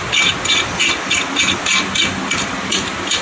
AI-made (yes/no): no